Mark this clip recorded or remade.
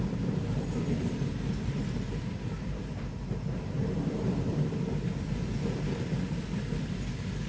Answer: recorded